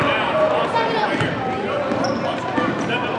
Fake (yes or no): no